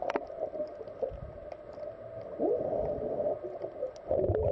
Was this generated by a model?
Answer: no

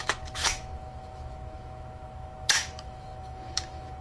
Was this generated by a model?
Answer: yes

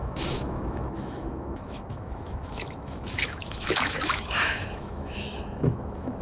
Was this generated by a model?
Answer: yes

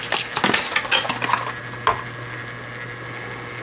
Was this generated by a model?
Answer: no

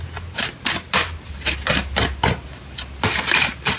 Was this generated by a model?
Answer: no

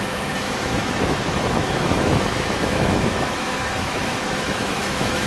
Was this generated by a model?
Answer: yes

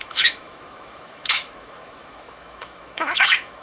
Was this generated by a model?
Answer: yes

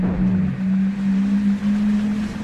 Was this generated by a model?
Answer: no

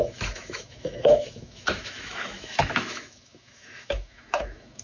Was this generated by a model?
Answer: yes